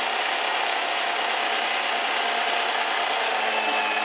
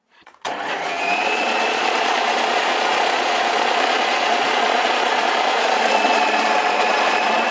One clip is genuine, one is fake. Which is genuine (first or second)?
first